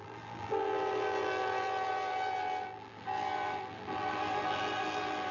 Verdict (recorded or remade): remade